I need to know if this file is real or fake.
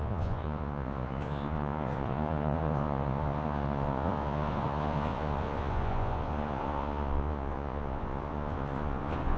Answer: fake